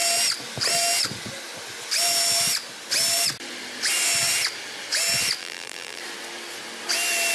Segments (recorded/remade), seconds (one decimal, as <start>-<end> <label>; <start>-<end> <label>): 0.0-5.4 recorded; 5.4-6.0 remade; 6.0-7.3 recorded